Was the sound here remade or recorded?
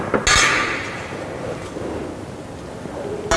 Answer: recorded